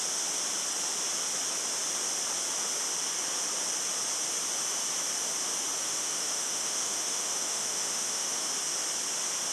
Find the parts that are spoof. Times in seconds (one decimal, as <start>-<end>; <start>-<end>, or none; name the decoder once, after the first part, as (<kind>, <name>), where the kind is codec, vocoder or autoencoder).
5.8-8.5 (autoencoder, DAC-VAE)